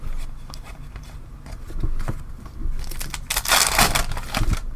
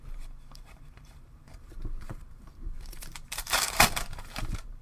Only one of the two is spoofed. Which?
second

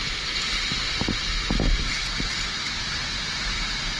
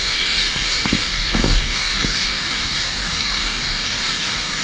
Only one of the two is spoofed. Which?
second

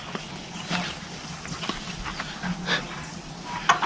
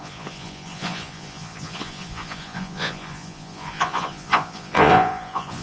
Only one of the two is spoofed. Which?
second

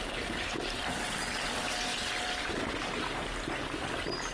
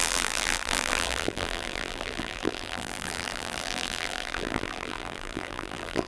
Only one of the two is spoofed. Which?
second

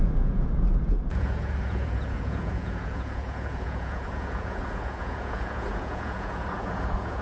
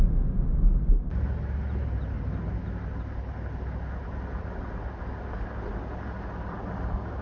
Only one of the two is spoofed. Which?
first